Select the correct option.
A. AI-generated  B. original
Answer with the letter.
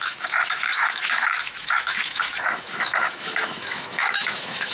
A